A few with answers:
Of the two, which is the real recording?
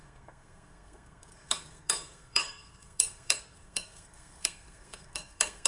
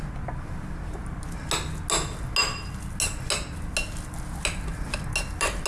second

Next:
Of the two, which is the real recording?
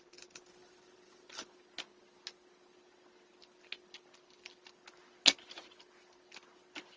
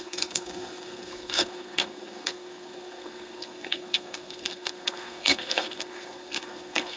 first